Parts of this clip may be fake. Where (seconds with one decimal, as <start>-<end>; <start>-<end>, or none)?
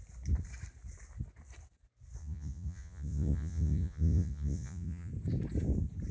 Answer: 2.2-5.1